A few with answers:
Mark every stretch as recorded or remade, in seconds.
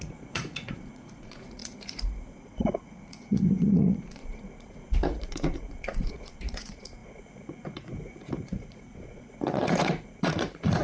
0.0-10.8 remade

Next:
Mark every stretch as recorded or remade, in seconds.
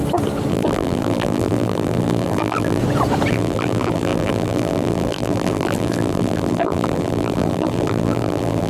0.0-0.5 recorded; 0.5-2.8 remade; 2.8-3.3 recorded; 3.3-8.7 remade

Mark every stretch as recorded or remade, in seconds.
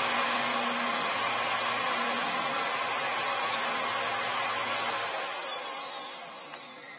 0.0-7.0 recorded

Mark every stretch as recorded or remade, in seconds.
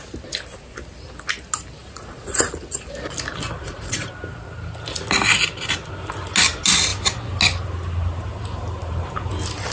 0.0-1.8 recorded; 1.8-2.4 remade; 2.4-3.6 recorded; 3.6-4.1 remade; 4.1-9.7 recorded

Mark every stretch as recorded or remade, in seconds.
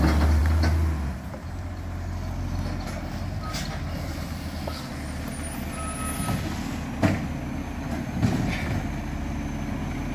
0.0-10.1 recorded